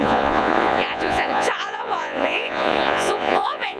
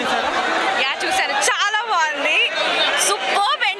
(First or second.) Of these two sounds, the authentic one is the second